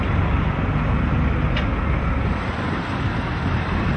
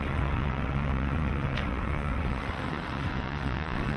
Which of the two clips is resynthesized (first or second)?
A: second